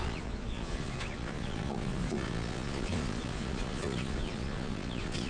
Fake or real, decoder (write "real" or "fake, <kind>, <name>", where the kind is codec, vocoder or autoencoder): fake, vocoder, Vocos